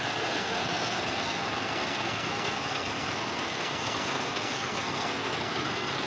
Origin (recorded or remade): remade